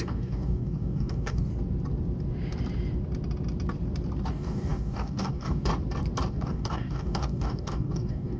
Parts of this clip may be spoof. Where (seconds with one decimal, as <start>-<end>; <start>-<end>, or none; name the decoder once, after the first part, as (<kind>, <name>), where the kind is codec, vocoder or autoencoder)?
0.0-1.5 (codec, DAC); 4.3-5.7; 6.3-8.4